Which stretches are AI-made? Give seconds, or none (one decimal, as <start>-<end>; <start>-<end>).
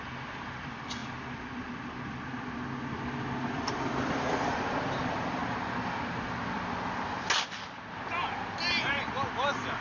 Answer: 0.0-5.4; 8.7-9.8